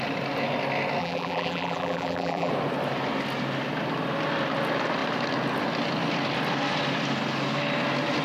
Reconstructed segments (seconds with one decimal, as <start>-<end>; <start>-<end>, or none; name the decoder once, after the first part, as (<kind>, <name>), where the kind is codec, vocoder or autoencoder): 1.0-2.5 (vocoder, BigVGAN v2)